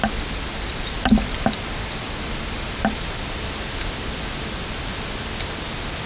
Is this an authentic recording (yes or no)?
yes